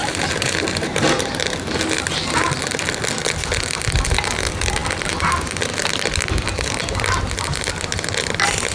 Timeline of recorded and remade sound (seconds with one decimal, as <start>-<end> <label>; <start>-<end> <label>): 0.0-1.4 remade; 1.4-8.7 recorded

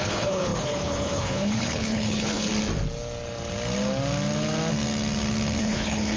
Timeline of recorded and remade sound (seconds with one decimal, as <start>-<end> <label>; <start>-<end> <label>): 0.0-2.5 remade; 2.5-5.6 recorded; 5.6-6.2 remade

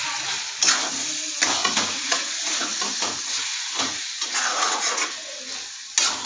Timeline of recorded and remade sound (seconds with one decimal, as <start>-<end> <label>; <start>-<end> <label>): 0.0-1.6 recorded; 1.6-5.4 remade; 5.4-6.3 recorded

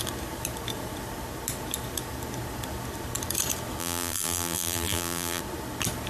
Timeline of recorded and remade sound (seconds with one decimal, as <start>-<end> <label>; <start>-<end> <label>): 0.0-3.8 recorded; 3.8-5.4 remade; 5.4-6.1 recorded

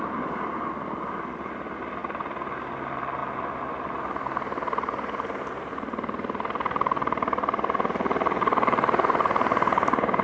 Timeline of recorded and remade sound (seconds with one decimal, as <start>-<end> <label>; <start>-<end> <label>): 0.0-10.2 recorded

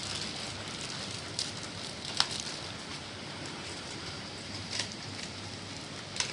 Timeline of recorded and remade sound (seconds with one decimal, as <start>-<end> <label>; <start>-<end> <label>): 0.0-2.9 recorded; 2.9-5.5 remade; 5.5-6.3 recorded

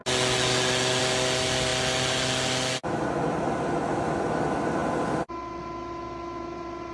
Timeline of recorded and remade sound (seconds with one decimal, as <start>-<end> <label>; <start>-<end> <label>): 0.0-6.9 recorded

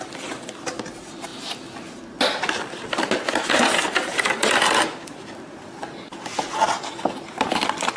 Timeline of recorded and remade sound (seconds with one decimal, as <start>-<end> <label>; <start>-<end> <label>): 0.0-8.0 recorded